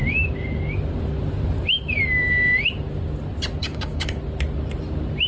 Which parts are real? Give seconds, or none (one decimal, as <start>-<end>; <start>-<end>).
0.0-3.6; 4.2-5.3

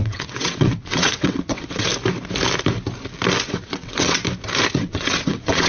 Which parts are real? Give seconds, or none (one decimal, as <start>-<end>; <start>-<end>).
1.9-3.5; 4.2-4.7

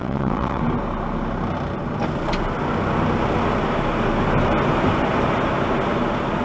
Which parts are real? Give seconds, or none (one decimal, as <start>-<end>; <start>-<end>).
0.6-6.4

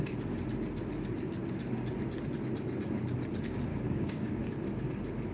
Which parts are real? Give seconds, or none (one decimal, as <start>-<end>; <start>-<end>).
0.0-3.7; 4.5-5.3

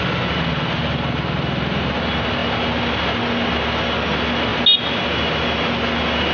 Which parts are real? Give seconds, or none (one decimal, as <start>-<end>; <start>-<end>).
0.0-6.3